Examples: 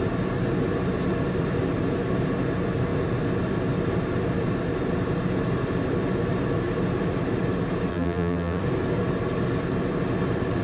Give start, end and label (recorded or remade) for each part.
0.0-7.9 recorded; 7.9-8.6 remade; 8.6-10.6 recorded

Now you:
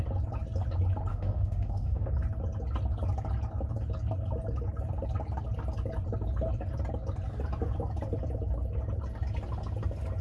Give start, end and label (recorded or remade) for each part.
0.0-1.1 recorded; 1.1-2.1 remade; 2.1-10.2 recorded

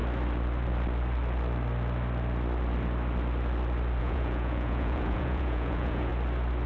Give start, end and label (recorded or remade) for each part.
0.0-4.0 recorded; 4.0-6.1 remade; 6.1-6.7 recorded

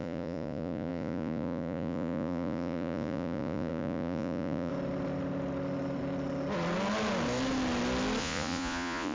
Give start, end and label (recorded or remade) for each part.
0.0-4.7 remade; 4.7-8.2 recorded; 8.2-9.1 remade

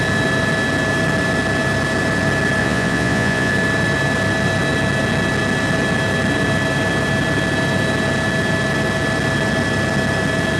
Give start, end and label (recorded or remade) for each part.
0.0-2.6 recorded; 2.6-3.5 remade; 3.5-10.6 recorded